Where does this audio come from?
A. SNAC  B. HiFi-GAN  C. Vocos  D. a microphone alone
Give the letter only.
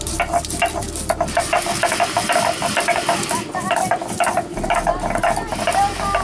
D